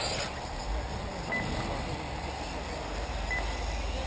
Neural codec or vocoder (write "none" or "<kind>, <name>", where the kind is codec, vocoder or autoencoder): none